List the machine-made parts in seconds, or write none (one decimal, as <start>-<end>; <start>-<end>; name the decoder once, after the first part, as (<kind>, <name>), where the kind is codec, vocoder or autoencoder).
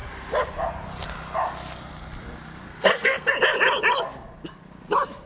2.7-3.3 (codec, SNAC)